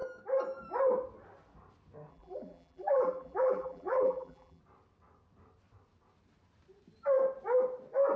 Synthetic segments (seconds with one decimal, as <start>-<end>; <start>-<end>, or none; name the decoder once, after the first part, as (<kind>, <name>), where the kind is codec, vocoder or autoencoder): 2.1-4.6 (vocoder, BigVGAN v2)